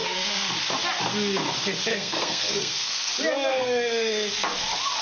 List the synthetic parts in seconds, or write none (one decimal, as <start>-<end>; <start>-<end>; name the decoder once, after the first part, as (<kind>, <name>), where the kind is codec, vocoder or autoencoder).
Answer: 0.0-0.5 (codec, SNAC); 1.9-3.1; 3.5-4.3